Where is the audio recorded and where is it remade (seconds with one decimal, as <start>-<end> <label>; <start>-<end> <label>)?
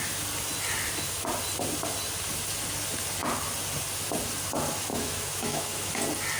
0.0-4.9 recorded; 4.9-6.0 remade; 6.0-6.4 recorded